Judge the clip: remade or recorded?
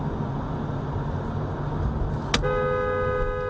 recorded